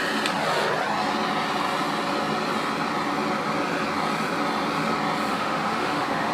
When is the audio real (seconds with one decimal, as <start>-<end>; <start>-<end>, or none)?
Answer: 0.0-5.3